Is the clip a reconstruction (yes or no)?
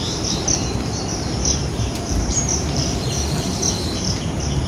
yes